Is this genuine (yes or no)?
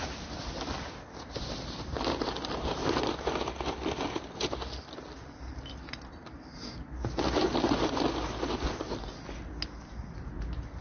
yes